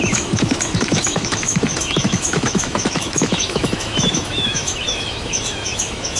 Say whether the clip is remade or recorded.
remade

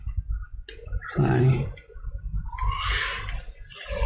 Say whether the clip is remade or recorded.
recorded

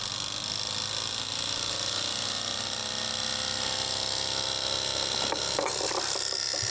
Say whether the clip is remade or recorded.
recorded